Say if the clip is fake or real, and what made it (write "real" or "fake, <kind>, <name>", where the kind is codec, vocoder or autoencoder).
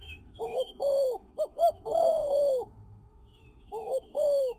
fake, autoencoder, DAC-VAE